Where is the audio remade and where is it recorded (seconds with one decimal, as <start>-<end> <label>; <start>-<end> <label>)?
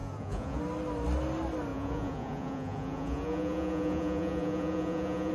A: 0.0-0.6 remade; 0.6-1.7 recorded; 1.7-5.3 remade